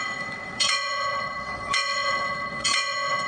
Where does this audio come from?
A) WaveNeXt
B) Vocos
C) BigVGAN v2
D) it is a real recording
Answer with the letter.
A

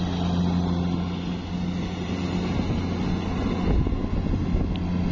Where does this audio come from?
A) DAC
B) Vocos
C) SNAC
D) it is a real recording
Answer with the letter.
D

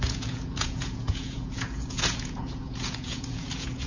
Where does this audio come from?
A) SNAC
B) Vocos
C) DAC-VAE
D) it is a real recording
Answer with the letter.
B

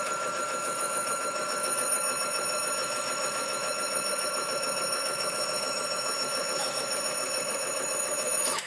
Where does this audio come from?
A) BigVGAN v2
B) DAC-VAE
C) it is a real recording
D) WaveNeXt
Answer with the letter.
B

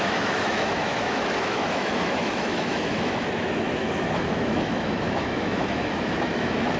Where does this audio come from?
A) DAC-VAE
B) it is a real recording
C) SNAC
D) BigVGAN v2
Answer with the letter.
A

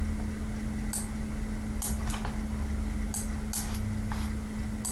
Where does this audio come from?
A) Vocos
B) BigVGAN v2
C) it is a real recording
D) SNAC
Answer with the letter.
C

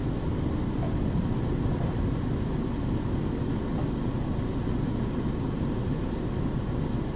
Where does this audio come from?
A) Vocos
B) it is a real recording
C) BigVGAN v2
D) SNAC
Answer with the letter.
B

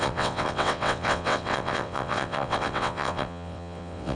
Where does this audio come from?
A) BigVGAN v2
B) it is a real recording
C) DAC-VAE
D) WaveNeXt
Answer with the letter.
D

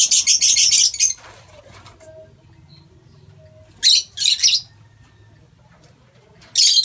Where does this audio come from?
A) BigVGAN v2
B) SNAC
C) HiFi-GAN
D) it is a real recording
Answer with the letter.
D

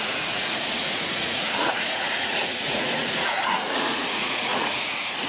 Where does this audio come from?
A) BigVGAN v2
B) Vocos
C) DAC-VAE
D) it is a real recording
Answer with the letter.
B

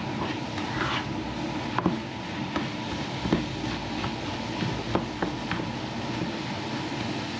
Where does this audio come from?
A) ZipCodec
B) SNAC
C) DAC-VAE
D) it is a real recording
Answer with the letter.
D